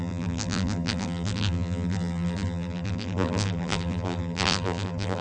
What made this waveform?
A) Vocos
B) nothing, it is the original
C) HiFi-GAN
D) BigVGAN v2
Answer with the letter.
D